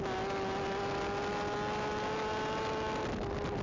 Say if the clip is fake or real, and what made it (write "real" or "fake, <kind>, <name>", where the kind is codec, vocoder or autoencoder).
real